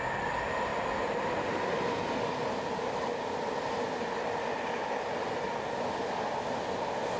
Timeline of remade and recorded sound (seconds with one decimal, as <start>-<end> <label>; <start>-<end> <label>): 0.0-7.2 recorded